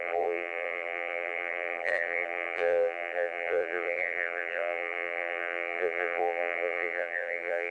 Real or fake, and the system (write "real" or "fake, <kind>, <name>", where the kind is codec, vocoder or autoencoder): fake, vocoder, BigVGAN v2